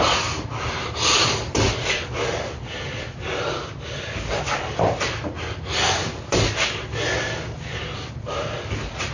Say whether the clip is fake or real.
real